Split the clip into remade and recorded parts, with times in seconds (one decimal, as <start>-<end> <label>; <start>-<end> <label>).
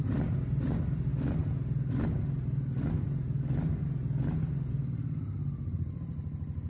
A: 0.0-6.7 recorded